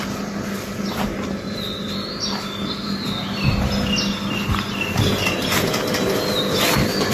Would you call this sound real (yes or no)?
yes